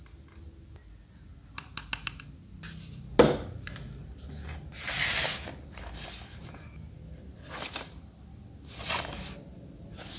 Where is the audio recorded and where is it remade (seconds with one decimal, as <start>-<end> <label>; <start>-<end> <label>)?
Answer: 0.0-10.2 recorded